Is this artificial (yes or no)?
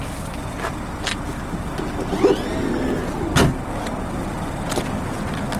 no